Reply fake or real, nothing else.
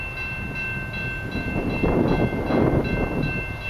real